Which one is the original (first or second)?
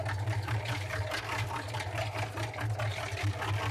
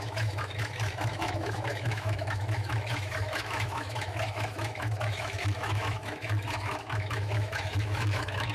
first